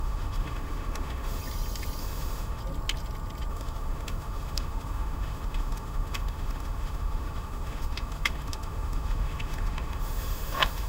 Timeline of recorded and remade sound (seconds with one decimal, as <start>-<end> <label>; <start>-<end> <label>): 0.0-1.4 remade; 1.4-2.0 recorded; 2.0-2.6 remade; 2.6-3.5 recorded; 3.5-10.9 remade